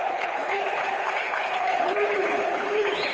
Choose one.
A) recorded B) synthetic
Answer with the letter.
B